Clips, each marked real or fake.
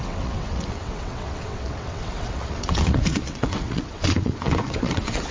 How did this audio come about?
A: fake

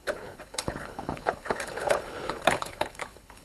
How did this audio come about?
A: fake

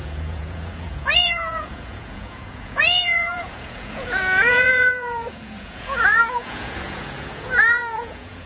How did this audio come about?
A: fake